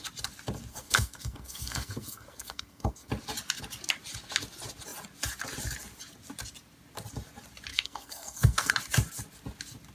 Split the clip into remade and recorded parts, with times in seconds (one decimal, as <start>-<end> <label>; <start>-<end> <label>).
0.0-0.7 recorded; 0.7-3.1 remade; 3.1-7.7 recorded; 7.7-8.7 remade; 8.7-9.9 recorded